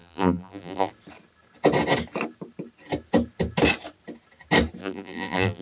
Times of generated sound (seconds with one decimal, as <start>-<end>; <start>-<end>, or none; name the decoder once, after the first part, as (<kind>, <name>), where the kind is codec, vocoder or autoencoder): 0.0-0.9 (vocoder, BigVGAN v2); 4.8-5.6